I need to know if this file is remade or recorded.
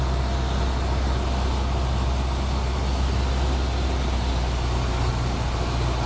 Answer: recorded